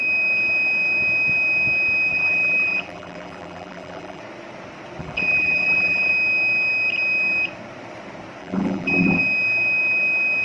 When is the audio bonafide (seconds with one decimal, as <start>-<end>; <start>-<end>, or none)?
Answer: 0.0-2.1; 4.2-5.0; 6.1-8.4; 9.2-10.4